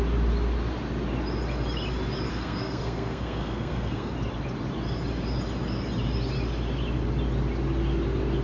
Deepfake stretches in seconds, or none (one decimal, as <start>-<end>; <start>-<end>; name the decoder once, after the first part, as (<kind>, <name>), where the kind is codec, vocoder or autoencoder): 2.3-4.1 (codec, SNAC)